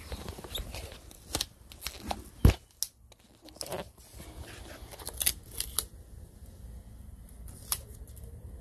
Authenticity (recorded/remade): recorded